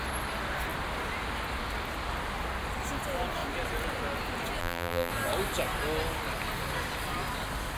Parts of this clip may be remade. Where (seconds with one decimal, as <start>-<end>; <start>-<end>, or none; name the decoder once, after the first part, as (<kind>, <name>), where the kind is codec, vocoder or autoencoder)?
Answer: 4.6-5.1 (vocoder, BigVGAN v2)